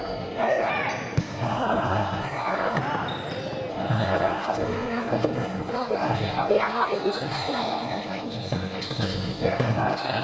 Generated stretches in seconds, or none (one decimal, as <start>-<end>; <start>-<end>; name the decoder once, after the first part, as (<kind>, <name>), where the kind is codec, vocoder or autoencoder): 0.0-0.7 (codec, SNAC); 1.2-2.8; 3.7-10.2

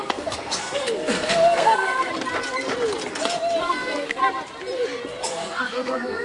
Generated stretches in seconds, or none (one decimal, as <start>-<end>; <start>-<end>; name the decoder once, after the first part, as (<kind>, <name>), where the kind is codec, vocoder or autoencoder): 0.0-2.1 (codec, SNAC); 3.6-4.2; 5.3-6.2

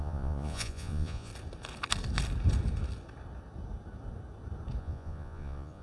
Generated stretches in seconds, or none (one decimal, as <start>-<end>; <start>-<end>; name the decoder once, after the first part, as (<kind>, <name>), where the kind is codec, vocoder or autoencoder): 0.0-1.3 (vocoder, Vocos); 4.8-5.8

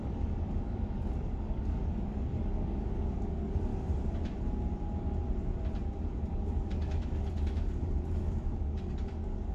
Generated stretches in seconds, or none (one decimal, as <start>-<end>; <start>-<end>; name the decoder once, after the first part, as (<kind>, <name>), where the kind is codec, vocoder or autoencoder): 0.0-3.7 (codec, DAC); 6.0-9.5

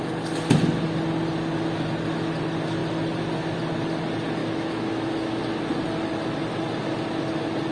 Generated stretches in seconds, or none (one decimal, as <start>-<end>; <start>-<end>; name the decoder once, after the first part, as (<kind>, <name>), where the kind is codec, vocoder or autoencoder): 4.4-5.4 (autoencoder, DAC-VAE)

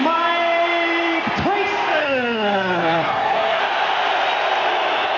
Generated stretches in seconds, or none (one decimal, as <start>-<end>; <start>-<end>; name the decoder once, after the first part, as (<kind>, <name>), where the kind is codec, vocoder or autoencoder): 2.0-3.6 (codec, SNAC)

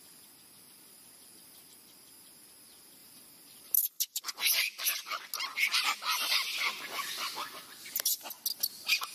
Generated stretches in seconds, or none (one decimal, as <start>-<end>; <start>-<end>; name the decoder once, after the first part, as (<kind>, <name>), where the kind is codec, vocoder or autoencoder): 3.0-4.2 (vocoder, BigVGAN v2); 5.5-6.8

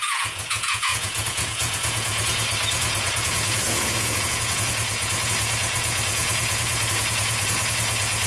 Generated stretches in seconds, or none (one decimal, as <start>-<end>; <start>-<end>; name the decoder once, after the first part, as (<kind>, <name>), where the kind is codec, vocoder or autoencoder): 0.0-8.3 (vocoder, Vocos)